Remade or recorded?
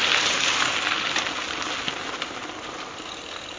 recorded